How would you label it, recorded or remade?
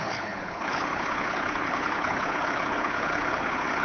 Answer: remade